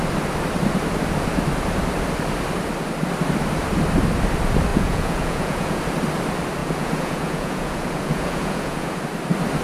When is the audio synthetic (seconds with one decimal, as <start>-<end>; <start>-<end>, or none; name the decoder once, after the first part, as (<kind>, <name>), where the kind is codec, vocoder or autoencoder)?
4.7-5.8 (vocoder, Vocos); 6.6-9.0